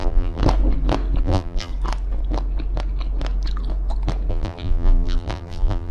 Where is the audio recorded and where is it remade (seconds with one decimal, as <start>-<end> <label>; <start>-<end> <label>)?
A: 0.0-0.4 remade; 0.4-1.2 recorded; 1.2-1.7 remade; 1.7-4.3 recorded; 4.3-5.9 remade